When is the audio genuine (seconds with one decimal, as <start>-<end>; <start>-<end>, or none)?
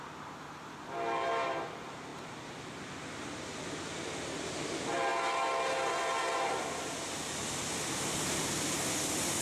0.0-9.4